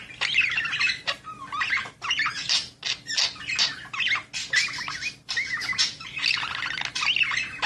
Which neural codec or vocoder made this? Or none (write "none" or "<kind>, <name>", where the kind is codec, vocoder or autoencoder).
none